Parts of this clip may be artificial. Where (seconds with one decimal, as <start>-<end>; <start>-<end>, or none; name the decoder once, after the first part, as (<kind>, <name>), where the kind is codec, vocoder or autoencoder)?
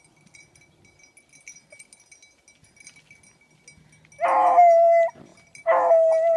none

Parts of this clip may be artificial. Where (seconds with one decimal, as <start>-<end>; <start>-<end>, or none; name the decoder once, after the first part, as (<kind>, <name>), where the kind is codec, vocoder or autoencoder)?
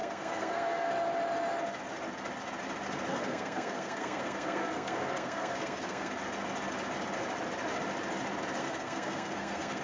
0.0-0.9 (codec, SNAC); 3.1-6.1; 8.6-9.8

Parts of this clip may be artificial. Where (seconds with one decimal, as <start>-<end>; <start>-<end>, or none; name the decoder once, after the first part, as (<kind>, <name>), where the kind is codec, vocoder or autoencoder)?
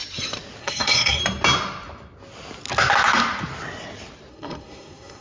0.6-1.2 (codec, SNAC); 4.3-5.2